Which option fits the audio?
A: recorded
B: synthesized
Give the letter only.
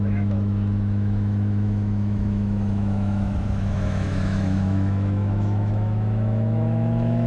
B